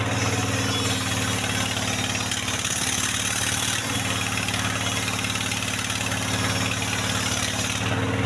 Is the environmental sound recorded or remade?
recorded